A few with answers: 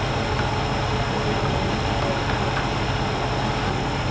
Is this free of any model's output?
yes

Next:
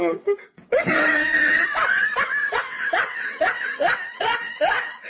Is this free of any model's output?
no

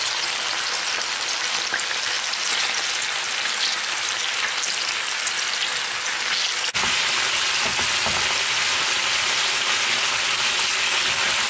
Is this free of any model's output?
yes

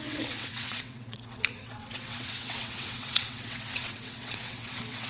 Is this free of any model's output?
no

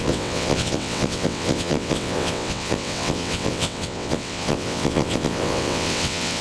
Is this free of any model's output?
no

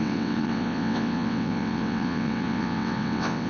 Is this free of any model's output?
no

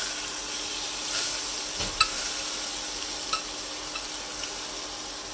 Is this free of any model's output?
yes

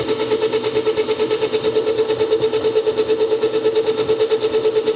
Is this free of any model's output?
yes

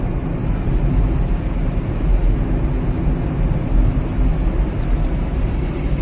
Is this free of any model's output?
yes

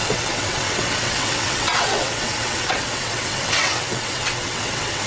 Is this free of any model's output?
no